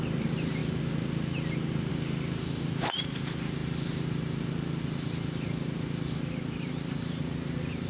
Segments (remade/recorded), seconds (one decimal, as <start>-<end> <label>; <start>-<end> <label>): 0.0-7.9 recorded